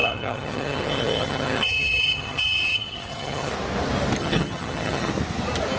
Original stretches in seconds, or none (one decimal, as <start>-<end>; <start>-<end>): 3.5-4.2; 5.1-5.8